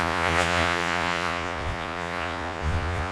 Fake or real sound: fake